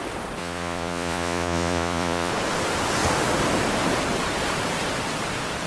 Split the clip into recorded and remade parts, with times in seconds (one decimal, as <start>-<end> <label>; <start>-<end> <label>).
0.0-0.4 recorded; 0.4-2.3 remade; 2.3-5.7 recorded